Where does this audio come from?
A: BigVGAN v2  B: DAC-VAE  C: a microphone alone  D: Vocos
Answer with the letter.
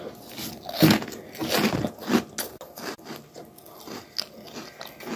C